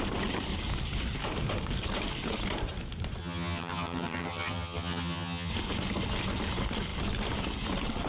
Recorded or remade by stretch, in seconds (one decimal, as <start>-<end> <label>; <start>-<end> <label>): 0.0-3.2 recorded; 3.2-5.5 remade; 5.5-8.1 recorded